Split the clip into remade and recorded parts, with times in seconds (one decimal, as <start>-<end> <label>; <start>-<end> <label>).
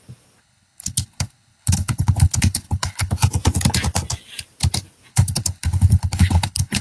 0.0-0.4 recorded; 0.4-3.1 remade; 3.1-5.1 recorded; 5.1-6.8 remade